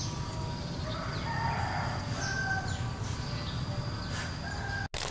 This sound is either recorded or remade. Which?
recorded